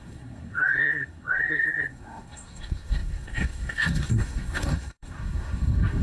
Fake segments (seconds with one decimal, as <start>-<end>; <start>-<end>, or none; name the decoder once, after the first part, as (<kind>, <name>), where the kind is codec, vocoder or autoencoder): 0.0-6.0 (codec, SNAC)